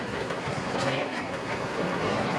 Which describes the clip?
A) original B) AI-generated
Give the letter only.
B